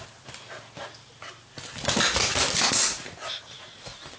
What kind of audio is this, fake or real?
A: real